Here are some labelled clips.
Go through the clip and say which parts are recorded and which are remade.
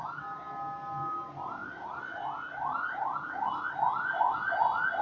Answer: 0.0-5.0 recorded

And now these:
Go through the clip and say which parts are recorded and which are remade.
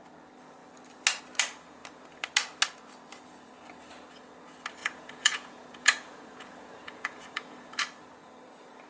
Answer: 0.0-4.8 recorded; 4.8-7.8 remade; 7.8-8.9 recorded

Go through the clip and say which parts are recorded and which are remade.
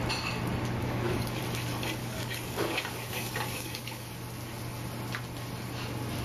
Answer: 0.0-0.8 recorded; 0.8-1.4 remade; 1.4-2.0 recorded; 2.0-4.1 remade; 4.1-6.2 recorded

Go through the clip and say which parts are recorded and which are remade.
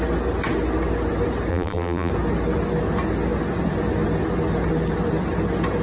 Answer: 0.0-1.5 recorded; 1.5-2.1 remade; 2.1-5.8 recorded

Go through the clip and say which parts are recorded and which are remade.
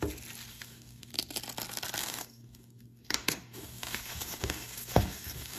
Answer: 0.0-0.5 recorded; 0.5-1.1 remade; 1.1-2.0 recorded; 2.0-5.6 remade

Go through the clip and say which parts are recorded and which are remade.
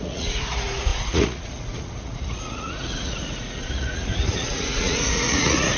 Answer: 0.0-5.8 remade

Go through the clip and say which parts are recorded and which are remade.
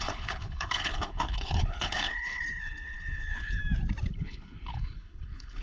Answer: 0.0-3.6 remade; 3.6-4.1 recorded; 4.1-5.6 remade